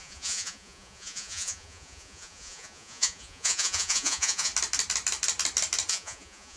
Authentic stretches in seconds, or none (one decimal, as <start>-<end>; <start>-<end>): 4.5-5.9